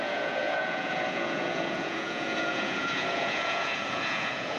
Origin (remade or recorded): remade